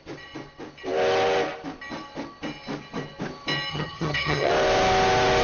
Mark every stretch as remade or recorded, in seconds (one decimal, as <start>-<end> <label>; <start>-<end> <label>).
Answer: 0.0-3.7 recorded; 3.7-4.5 remade; 4.5-5.4 recorded